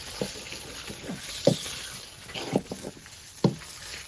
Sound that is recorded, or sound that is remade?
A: recorded